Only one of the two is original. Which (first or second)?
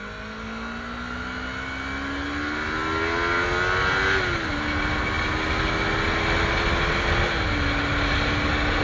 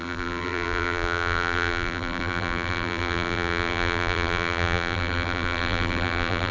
first